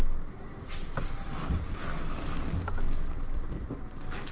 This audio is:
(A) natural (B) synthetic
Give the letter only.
A